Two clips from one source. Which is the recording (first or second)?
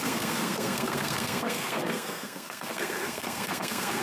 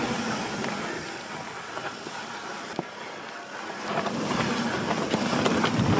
second